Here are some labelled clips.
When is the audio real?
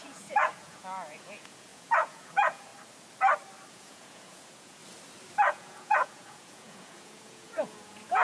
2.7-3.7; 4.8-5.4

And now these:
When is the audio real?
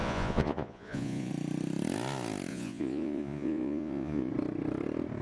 1.3-2.5; 4.3-5.2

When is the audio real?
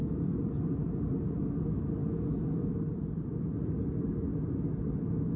0.6-2.0; 2.7-5.4